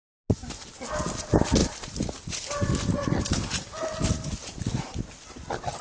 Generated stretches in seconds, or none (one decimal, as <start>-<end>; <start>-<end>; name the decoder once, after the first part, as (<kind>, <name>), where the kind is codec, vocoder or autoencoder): none